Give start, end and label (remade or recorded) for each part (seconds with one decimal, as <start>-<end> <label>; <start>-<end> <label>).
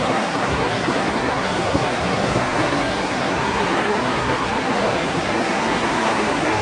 0.0-6.6 remade